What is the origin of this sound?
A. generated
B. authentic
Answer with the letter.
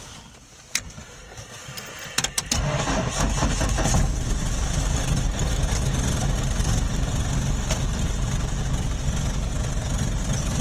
B